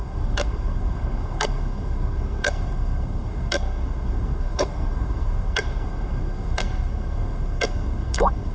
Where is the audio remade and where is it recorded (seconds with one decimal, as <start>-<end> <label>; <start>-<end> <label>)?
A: 0.0-8.5 remade